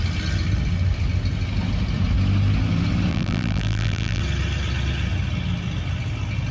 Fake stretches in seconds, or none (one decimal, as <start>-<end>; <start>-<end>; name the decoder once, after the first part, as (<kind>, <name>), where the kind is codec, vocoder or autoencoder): 3.1-4.2 (vocoder, BigVGAN v2)